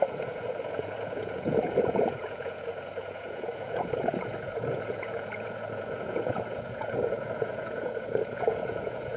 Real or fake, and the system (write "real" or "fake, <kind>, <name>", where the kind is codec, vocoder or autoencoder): fake, vocoder, Vocos